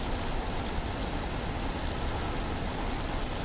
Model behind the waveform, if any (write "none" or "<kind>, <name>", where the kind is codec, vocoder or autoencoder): none